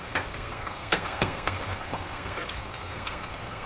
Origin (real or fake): fake